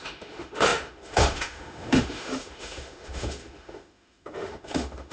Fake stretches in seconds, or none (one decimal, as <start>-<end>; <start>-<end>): 0.0-5.1